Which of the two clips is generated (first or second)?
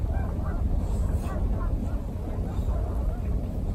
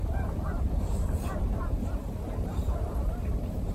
second